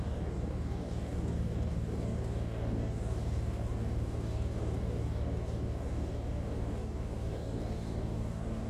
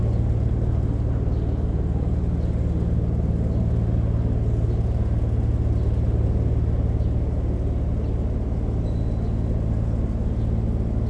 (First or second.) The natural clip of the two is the second